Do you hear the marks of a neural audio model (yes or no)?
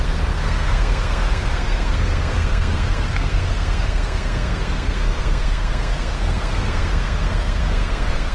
yes